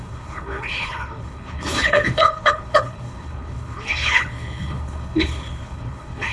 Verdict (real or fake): fake